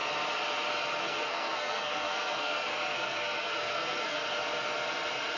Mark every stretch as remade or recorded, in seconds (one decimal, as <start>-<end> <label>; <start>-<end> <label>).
0.0-1.0 recorded; 1.0-4.2 remade; 4.2-5.4 recorded